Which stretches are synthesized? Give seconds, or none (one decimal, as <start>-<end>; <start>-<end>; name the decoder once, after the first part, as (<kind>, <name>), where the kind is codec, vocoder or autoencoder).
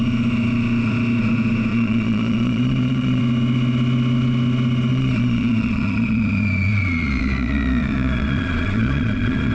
1.7-3.2 (vocoder, Vocos); 4.9-9.5